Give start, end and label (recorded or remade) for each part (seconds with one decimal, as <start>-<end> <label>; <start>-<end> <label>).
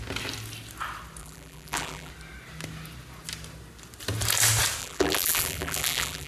0.0-1.2 recorded; 1.2-2.1 remade; 2.1-4.8 recorded; 4.8-6.3 remade